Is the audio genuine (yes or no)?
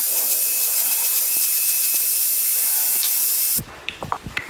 no